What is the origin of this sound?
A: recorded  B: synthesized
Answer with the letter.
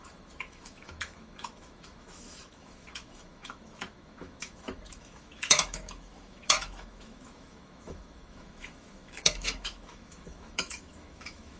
B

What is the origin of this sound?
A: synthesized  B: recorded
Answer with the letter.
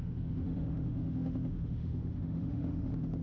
A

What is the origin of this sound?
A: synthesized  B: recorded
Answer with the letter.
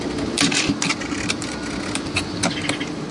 B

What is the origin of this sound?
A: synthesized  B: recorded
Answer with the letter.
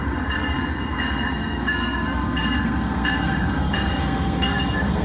A